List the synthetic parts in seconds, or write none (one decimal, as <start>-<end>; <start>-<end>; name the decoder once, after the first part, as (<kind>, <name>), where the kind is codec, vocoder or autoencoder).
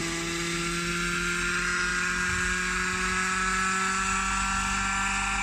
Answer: none